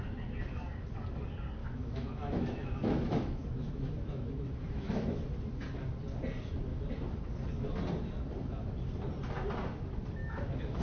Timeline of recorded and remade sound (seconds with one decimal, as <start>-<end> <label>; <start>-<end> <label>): 0.0-1.6 recorded; 1.6-5.2 remade; 5.2-10.2 recorded; 10.2-10.8 remade